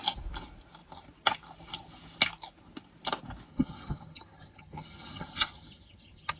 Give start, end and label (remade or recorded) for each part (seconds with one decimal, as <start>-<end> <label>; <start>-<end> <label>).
0.0-3.5 recorded; 3.5-6.4 remade